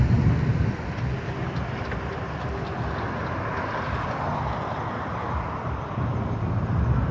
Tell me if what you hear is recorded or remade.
recorded